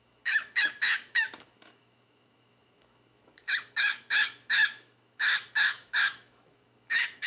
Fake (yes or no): yes